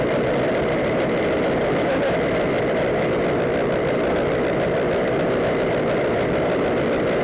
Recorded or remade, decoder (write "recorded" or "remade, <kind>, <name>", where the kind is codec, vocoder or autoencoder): recorded